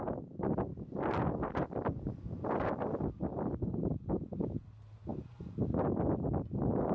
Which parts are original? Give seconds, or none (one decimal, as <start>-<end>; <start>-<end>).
0.0-0.7; 4.1-5.1; 6.0-6.9